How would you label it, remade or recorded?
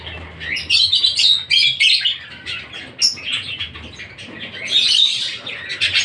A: recorded